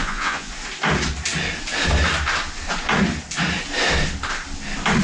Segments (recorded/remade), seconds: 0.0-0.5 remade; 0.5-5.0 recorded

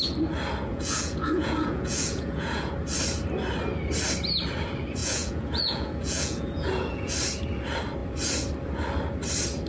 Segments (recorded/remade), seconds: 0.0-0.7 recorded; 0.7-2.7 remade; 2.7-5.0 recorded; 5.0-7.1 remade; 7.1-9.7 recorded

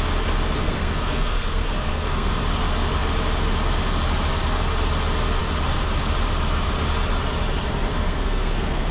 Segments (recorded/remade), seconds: 0.0-0.6 recorded; 0.6-2.4 remade; 2.4-7.9 recorded; 7.9-8.9 remade

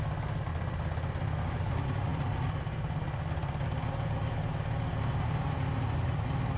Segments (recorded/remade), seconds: 0.0-6.6 recorded

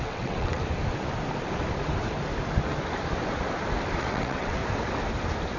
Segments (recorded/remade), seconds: 0.0-0.6 remade; 0.6-4.0 recorded; 4.0-4.6 remade; 4.6-5.6 recorded

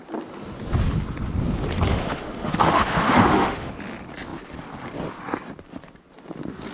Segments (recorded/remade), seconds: 0.0-1.9 recorded; 1.9-3.7 remade; 3.7-6.7 recorded

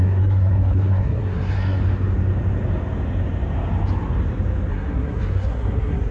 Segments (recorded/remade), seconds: 0.0-1.8 remade; 1.8-4.7 recorded; 4.7-6.1 remade

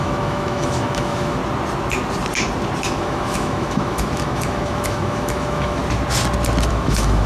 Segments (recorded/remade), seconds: 0.0-1.4 remade; 1.4-2.8 recorded; 2.8-5.8 remade; 5.8-6.7 recorded; 6.7-7.3 remade